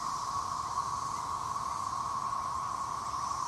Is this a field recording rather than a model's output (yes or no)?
yes